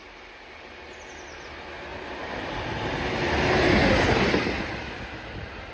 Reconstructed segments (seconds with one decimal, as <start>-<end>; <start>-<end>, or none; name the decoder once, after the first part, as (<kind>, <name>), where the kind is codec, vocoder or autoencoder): none